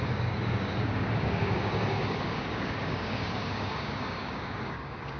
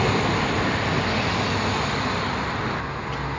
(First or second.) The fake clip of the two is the first